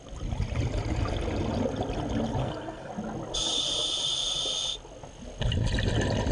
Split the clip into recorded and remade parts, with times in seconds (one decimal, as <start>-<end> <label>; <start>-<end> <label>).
0.0-2.4 recorded; 2.4-2.9 remade; 2.9-6.3 recorded